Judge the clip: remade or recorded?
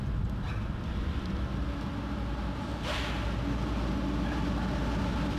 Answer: recorded